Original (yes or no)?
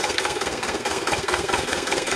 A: no